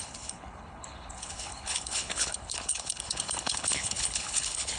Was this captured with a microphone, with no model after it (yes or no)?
no